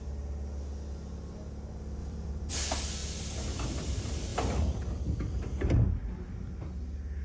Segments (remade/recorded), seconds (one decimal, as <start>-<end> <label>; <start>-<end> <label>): 0.0-2.0 recorded; 2.0-2.5 remade; 2.5-3.0 recorded; 3.0-3.8 remade; 3.8-7.2 recorded